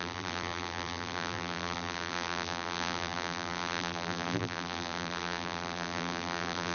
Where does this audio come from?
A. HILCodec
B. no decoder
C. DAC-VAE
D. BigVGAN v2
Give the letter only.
D